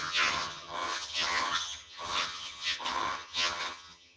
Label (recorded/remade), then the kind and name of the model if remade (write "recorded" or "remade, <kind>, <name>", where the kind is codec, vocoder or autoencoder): remade, vocoder, HiFi-GAN